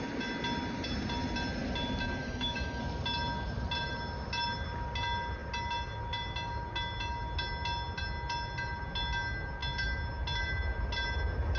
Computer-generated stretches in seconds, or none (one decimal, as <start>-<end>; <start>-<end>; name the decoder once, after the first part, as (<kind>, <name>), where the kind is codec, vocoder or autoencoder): 2.2-2.8 (codec, DAC)